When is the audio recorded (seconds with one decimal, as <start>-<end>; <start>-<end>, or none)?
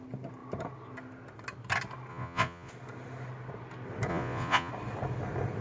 0.0-2.1; 2.7-4.1; 4.7-5.6